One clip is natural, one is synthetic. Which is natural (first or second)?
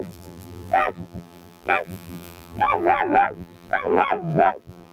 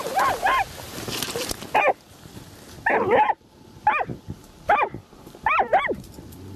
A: second